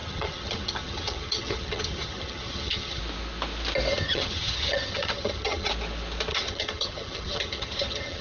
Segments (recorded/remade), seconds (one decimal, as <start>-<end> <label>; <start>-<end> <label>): 0.0-3.0 remade; 3.0-3.9 recorded; 3.9-5.7 remade; 5.7-6.3 recorded; 6.3-8.2 remade